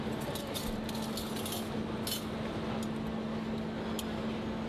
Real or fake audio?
real